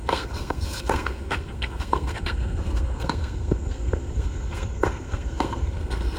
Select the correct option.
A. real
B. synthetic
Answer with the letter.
B